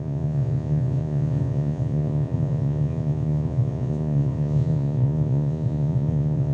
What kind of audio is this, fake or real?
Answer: fake